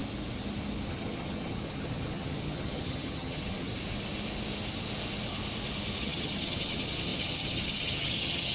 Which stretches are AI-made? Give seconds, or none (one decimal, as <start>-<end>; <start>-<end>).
0.9-3.7; 6.0-8.5